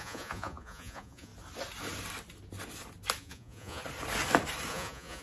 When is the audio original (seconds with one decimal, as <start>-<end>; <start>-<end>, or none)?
1.3-3.2; 3.8-4.7